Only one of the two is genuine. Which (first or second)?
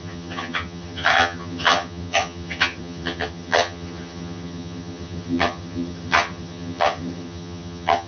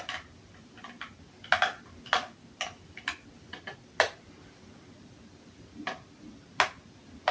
second